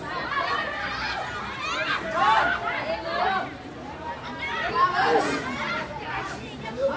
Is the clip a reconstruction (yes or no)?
no